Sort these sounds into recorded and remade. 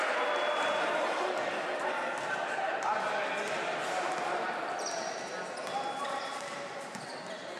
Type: recorded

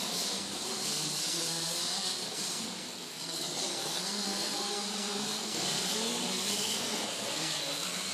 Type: remade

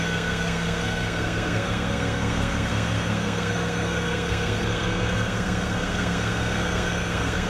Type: remade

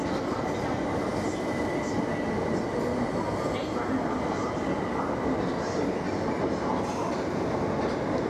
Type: recorded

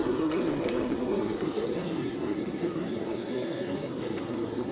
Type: remade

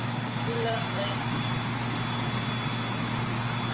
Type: recorded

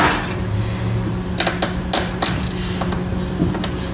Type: recorded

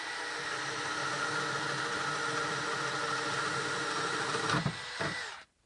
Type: recorded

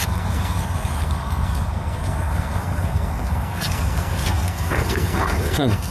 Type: remade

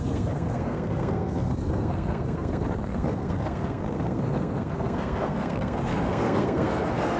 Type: remade